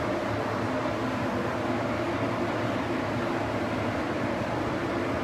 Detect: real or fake real